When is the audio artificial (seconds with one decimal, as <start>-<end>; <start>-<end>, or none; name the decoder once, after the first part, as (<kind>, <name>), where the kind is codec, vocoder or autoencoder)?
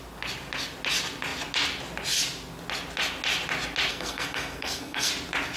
3.9-5.1 (codec, SNAC)